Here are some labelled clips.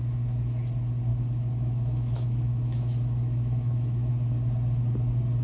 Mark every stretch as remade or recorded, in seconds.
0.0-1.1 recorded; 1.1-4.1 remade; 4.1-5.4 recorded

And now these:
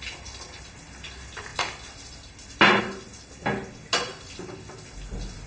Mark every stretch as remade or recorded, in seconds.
0.0-5.5 recorded

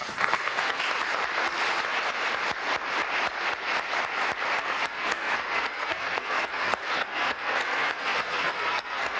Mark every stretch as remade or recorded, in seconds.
0.0-0.8 remade; 0.8-4.6 recorded; 4.6-9.2 remade

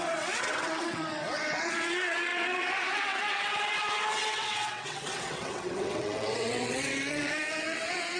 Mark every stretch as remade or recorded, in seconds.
0.0-8.2 remade

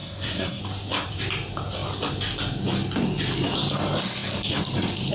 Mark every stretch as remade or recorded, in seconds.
0.0-0.6 remade; 0.6-5.1 recorded

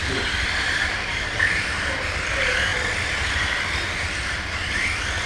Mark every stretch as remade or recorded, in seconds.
0.0-2.7 remade; 2.7-5.3 recorded

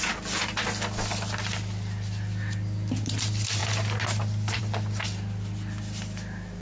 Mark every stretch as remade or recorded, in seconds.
0.0-6.6 recorded